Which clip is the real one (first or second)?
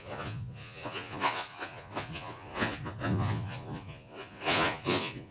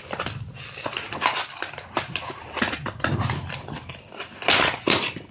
second